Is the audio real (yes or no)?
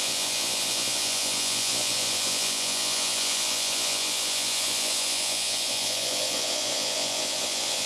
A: no